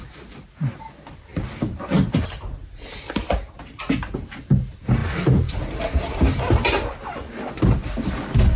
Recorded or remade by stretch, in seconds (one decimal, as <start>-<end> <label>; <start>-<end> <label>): 0.0-1.3 recorded; 1.3-2.2 remade; 2.2-8.6 recorded